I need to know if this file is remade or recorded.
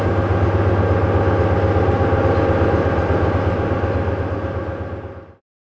recorded